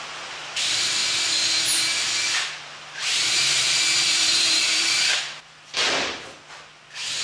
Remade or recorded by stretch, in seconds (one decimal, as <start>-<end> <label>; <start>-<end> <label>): 0.0-1.0 remade; 1.0-2.6 recorded; 2.6-5.8 remade; 5.8-7.2 recorded